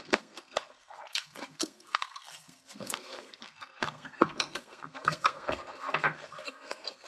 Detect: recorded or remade remade